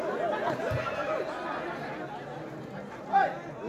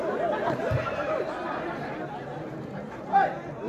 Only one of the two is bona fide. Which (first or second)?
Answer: first